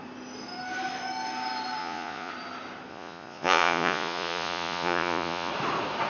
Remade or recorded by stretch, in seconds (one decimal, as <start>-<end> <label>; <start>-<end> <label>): 0.0-1.8 recorded; 1.8-2.3 remade; 2.3-2.9 recorded; 2.9-5.5 remade; 5.5-6.1 recorded